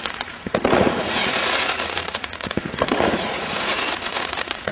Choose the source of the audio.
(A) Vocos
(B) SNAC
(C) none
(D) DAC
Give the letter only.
A